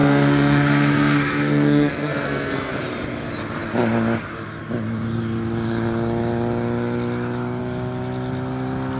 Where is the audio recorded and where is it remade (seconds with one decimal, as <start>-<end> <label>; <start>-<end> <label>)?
0.0-2.7 remade; 2.7-9.0 recorded